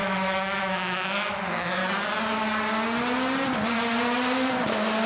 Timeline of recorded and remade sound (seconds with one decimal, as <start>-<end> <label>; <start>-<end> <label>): 0.0-1.8 remade; 1.8-5.1 recorded

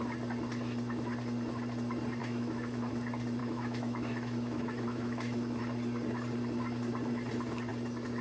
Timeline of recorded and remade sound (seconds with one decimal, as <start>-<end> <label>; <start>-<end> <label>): 0.0-2.2 recorded; 2.2-2.9 remade; 2.9-3.4 recorded; 3.4-5.6 remade; 5.6-8.2 recorded

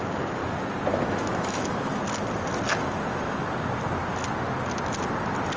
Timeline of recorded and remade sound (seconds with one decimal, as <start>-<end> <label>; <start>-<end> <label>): 0.0-0.4 remade; 0.4-0.9 recorded; 0.9-2.0 remade; 2.0-5.6 recorded

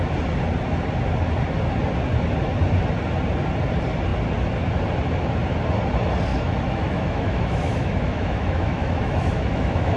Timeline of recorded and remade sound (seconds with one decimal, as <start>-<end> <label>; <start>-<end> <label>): 0.0-6.3 recorded; 6.3-10.0 remade

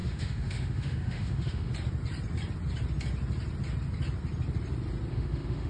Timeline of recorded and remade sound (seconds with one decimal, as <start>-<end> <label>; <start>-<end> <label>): 0.0-1.7 remade; 1.7-5.1 recorded; 5.1-5.7 remade